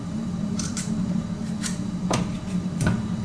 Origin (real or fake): fake